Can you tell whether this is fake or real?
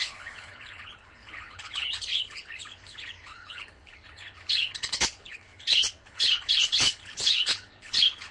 fake